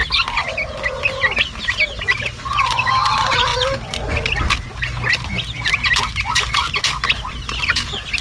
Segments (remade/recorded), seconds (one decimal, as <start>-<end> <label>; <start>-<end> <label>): 0.0-8.2 recorded